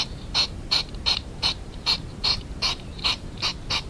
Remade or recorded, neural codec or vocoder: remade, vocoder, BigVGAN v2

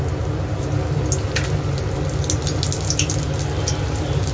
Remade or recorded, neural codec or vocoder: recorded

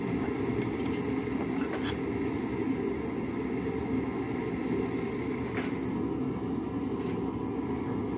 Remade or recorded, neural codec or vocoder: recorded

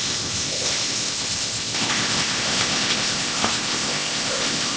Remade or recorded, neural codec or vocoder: remade, codec, ZipCodec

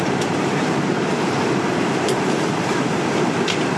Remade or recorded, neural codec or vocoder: remade, vocoder, BigVGAN v2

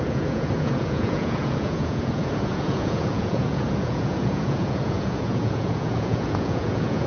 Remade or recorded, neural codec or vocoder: remade, vocoder, Vocos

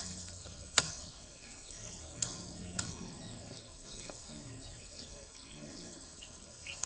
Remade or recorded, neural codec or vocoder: remade, codec, SNAC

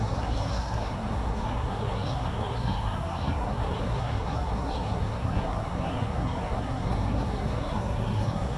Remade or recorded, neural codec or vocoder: remade, codec, SNAC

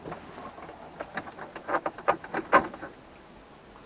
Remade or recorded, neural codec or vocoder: recorded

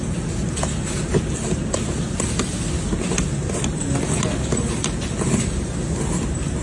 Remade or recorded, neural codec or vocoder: recorded